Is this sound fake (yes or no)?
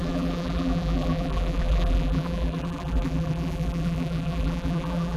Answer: yes